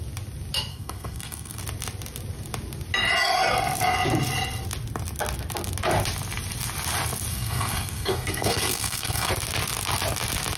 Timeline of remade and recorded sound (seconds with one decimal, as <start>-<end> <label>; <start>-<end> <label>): 0.0-0.7 recorded; 0.7-1.6 remade; 1.6-7.3 recorded; 7.3-9.3 remade; 9.3-10.6 recorded